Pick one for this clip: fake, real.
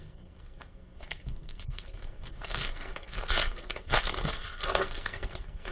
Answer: fake